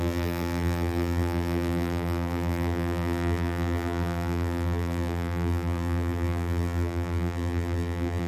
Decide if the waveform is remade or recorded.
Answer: remade